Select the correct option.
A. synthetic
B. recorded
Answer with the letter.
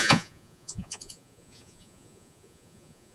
A